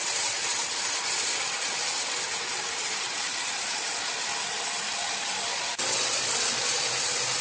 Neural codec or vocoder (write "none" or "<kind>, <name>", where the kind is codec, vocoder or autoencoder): none